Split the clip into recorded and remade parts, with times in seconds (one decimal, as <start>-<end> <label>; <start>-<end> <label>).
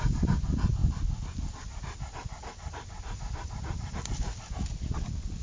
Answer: 0.0-5.4 recorded